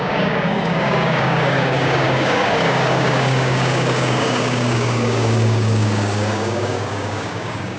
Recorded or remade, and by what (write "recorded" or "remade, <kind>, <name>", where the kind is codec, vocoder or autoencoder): remade, codec, DAC